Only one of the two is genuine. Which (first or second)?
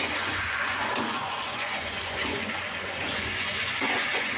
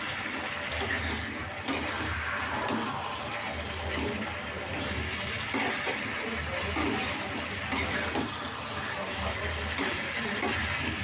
second